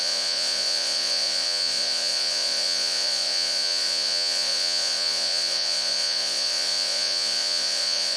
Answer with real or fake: fake